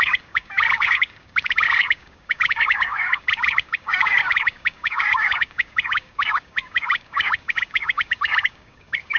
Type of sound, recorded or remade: remade